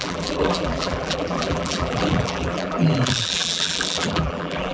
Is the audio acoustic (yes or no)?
no